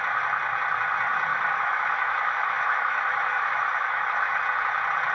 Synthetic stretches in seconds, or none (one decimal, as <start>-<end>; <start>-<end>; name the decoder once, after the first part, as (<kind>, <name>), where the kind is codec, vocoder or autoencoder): 1.3-4.4 (autoencoder, DAC-VAE)